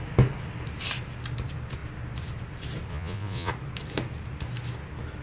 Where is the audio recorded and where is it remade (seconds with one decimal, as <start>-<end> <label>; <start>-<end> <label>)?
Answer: 0.0-2.9 recorded; 2.9-3.5 remade; 3.5-5.2 recorded